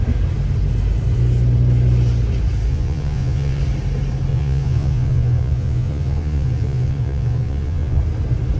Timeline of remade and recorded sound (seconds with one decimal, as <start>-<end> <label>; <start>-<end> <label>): 0.0-2.7 recorded; 2.7-3.6 remade; 3.6-4.3 recorded; 4.3-8.0 remade; 8.0-8.6 recorded